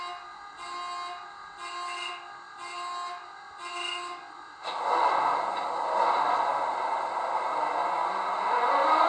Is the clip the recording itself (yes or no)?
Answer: yes